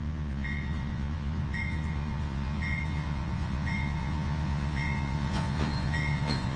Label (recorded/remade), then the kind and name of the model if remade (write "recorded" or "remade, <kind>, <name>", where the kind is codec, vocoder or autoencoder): remade, vocoder, Vocos